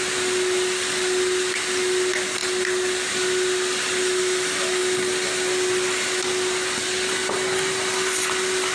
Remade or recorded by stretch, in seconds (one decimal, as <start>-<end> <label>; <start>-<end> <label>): 0.0-8.7 recorded